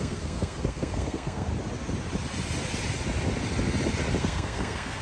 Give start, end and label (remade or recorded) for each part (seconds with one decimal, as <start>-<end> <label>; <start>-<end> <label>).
0.0-1.5 remade; 1.5-4.2 recorded; 4.2-5.0 remade